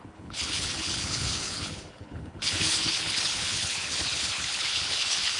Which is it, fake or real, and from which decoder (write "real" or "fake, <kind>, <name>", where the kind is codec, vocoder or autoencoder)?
fake, codec, HILCodec